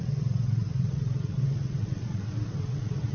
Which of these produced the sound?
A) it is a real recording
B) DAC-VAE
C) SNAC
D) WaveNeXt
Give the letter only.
D